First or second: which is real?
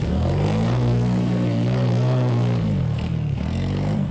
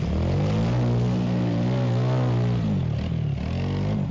second